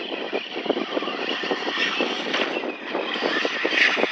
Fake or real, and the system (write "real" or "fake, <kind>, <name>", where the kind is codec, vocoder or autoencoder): real